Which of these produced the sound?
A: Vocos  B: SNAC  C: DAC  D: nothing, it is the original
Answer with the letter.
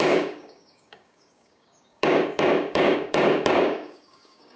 C